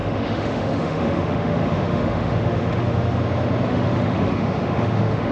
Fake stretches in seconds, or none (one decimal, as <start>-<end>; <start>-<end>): 0.0-3.2; 3.7-5.3